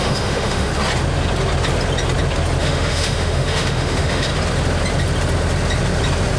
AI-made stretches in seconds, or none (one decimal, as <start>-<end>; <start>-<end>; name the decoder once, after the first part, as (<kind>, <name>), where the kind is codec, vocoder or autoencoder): 0.0-0.7 (autoencoder, DAC-VAE); 2.6-4.3